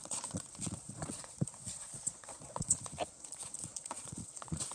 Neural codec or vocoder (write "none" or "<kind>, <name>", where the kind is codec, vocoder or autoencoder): vocoder, Vocos